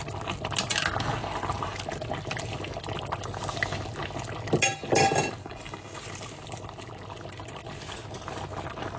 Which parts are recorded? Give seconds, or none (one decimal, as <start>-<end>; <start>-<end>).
0.0-5.4; 6.0-9.0